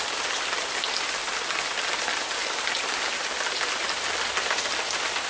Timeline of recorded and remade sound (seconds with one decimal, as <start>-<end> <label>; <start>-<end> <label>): 0.0-5.3 recorded